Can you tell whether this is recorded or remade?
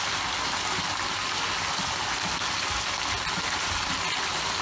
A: recorded